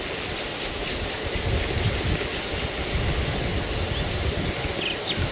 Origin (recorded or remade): recorded